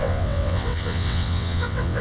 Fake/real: fake